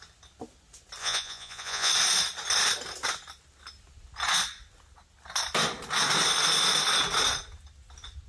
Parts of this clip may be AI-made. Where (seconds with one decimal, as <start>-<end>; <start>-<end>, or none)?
1.0-1.9